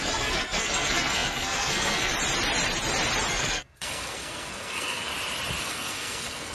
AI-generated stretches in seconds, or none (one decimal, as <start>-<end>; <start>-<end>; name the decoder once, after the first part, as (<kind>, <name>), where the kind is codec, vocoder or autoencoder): 0.0-2.1 (codec, SNAC); 3.3-5.1; 5.6-6.5